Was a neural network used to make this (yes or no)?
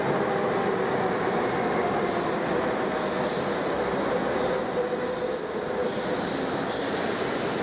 no